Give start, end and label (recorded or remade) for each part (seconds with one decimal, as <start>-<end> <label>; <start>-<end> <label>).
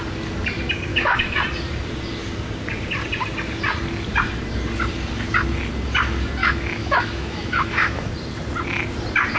0.0-0.9 recorded; 0.9-1.4 remade; 1.4-6.4 recorded; 6.4-8.1 remade; 8.1-9.4 recorded